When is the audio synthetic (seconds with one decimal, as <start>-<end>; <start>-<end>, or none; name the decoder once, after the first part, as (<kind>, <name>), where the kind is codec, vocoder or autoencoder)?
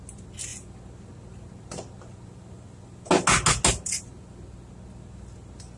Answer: none